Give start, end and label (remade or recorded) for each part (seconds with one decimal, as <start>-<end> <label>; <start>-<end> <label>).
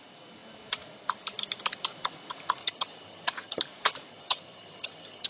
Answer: 0.0-2.6 recorded; 2.6-3.6 remade; 3.6-4.1 recorded; 4.1-5.3 remade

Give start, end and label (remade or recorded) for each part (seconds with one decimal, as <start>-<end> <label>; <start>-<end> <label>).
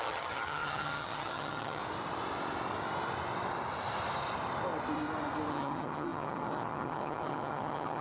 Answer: 0.0-1.8 remade; 1.8-5.5 recorded; 5.5-8.0 remade